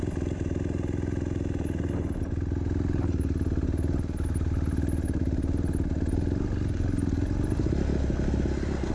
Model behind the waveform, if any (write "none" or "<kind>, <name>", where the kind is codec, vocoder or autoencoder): none